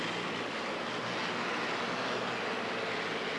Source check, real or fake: real